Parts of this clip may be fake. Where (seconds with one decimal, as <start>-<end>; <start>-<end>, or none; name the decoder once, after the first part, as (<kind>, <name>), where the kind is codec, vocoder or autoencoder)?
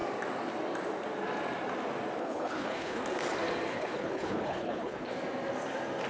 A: 2.2-3.0 (codec, HILCodec); 3.7-5.1